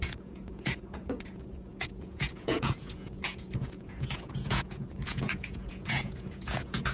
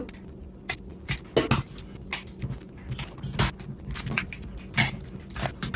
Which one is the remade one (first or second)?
first